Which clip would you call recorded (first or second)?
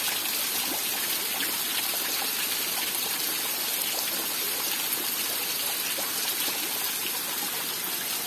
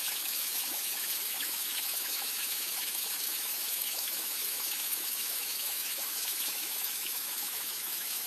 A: first